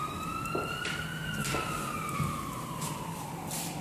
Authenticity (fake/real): fake